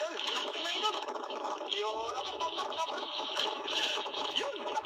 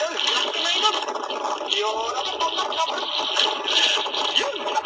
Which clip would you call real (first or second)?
second